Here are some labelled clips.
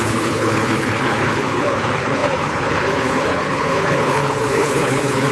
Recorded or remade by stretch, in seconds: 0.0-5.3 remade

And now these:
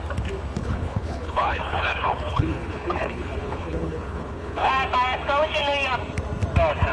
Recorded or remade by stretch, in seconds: 0.0-0.6 recorded; 0.6-4.7 remade; 4.7-6.9 recorded

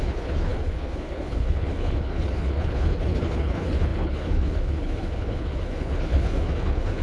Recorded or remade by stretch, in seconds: 0.0-7.0 remade

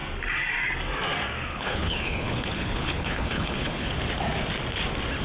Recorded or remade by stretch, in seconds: 0.0-1.5 recorded; 1.5-3.9 remade; 3.9-5.2 recorded

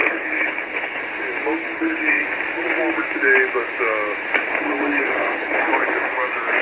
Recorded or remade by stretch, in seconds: 0.0-1.0 remade; 1.0-1.6 recorded; 1.6-2.2 remade; 2.2-4.9 recorded; 4.9-5.7 remade; 5.7-6.6 recorded

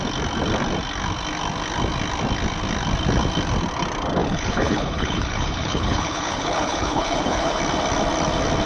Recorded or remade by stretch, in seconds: 0.0-4.2 recorded; 4.2-7.6 remade; 7.6-8.7 recorded

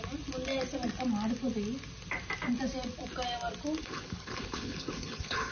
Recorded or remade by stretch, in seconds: 0.0-3.8 recorded; 3.8-5.5 remade